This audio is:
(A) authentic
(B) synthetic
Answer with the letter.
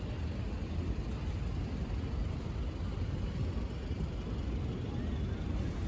A